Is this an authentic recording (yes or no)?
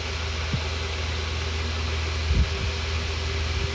yes